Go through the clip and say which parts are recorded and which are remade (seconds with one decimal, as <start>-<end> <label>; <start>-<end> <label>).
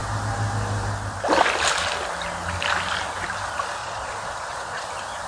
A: 0.0-3.8 recorded; 3.8-4.8 remade; 4.8-5.3 recorded